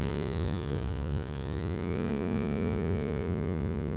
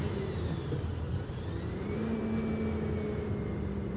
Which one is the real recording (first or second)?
second